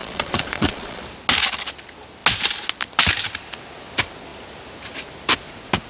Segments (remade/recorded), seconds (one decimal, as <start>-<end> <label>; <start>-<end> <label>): 0.0-1.0 remade; 1.0-5.9 recorded